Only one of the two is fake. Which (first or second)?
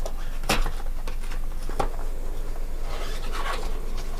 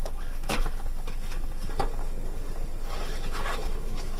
second